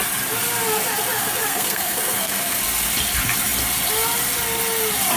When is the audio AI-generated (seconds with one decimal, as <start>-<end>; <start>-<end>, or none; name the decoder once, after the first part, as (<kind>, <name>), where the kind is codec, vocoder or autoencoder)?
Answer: 1.2-2.6 (codec, SNAC)